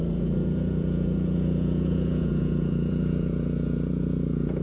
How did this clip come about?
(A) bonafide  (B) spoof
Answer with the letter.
B